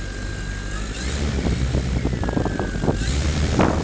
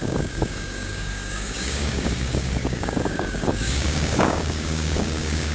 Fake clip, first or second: second